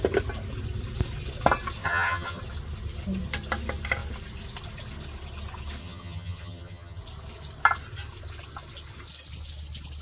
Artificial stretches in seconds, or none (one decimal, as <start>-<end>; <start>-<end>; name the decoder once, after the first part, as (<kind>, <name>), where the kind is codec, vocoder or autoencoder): 1.8-2.4 (vocoder, HiFi-GAN); 5.8-7.0